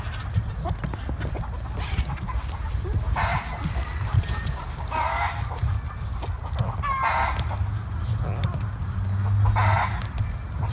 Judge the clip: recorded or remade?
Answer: recorded